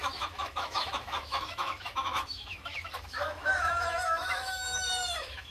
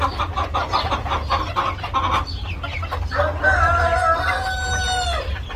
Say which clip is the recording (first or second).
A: second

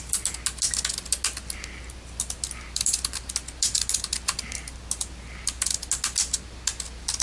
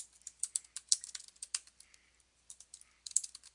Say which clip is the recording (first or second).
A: first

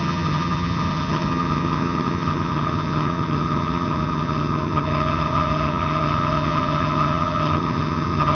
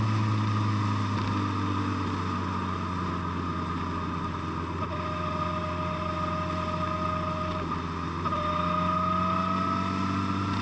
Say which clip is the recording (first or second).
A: second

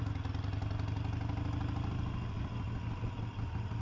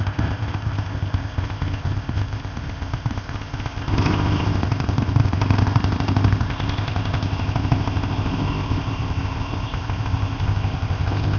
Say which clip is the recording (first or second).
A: first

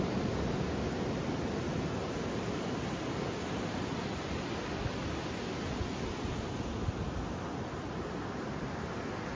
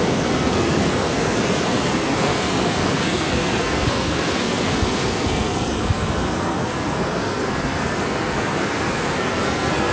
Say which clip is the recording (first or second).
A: first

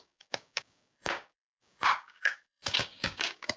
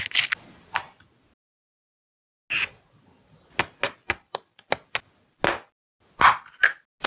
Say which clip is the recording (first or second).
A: second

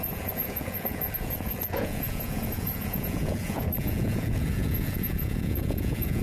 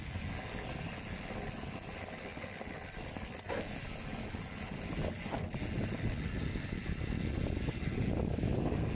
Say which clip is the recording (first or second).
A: second